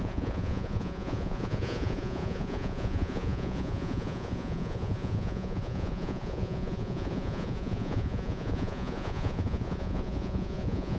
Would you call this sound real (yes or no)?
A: no